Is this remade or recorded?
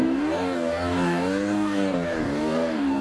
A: remade